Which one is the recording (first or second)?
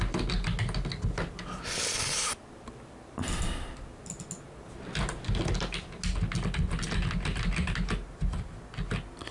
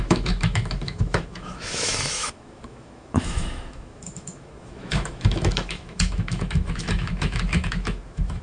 first